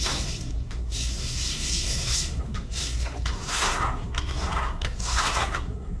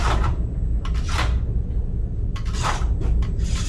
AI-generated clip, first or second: first